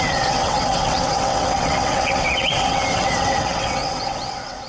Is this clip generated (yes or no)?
yes